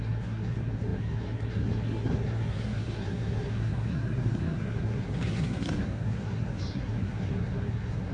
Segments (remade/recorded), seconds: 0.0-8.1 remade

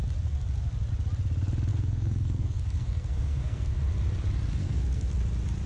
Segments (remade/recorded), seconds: 0.0-1.7 recorded; 1.7-3.8 remade; 3.8-4.6 recorded; 4.6-5.1 remade; 5.1-5.7 recorded

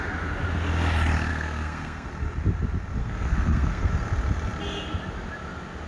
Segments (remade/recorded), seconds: 0.0-1.3 recorded; 1.3-2.1 remade; 2.1-3.0 recorded; 3.0-3.9 remade; 3.9-5.9 recorded

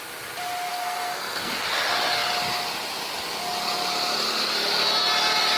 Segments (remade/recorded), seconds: 0.0-0.7 recorded; 0.7-1.6 remade; 1.6-5.6 recorded

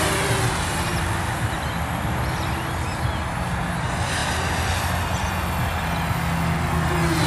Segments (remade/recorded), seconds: 0.0-7.3 recorded

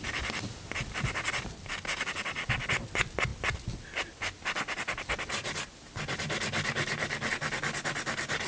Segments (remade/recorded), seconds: 0.0-8.5 recorded

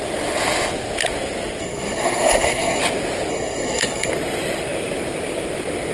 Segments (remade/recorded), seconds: 0.0-1.6 recorded; 1.6-2.8 remade; 2.8-3.3 recorded; 3.3-4.1 remade; 4.1-5.9 recorded

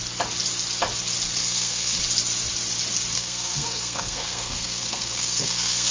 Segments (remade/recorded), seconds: 0.0-1.4 recorded; 1.4-2.0 remade; 2.0-3.1 recorded; 3.1-5.9 remade